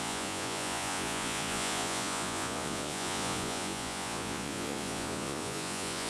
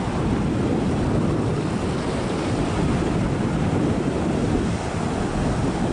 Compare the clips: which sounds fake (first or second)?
first